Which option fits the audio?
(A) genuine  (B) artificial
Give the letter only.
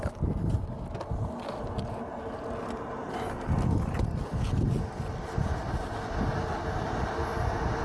A